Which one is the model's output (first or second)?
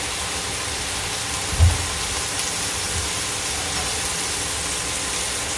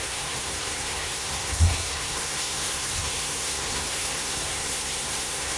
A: second